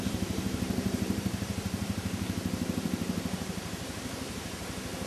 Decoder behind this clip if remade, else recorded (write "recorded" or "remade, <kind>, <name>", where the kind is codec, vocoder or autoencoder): remade, vocoder, BigVGAN v2